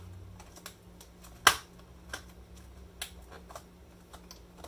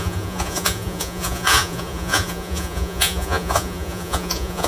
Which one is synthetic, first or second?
second